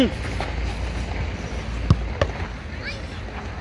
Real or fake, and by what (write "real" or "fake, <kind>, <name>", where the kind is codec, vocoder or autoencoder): real